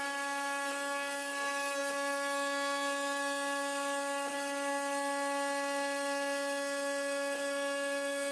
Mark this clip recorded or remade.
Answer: recorded